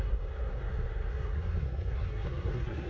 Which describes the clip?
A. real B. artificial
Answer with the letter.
B